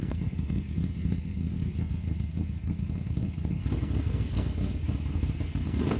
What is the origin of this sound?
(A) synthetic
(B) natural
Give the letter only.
A